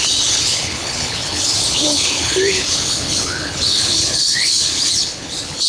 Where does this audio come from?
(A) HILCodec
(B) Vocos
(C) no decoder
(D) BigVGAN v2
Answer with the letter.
A